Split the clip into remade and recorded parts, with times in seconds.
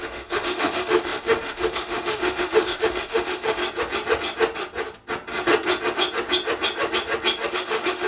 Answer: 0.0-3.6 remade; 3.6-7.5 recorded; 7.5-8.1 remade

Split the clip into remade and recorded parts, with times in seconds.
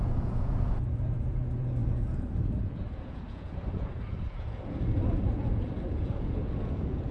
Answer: 0.0-7.1 remade